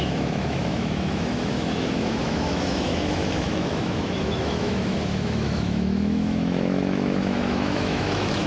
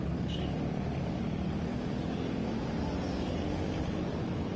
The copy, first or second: first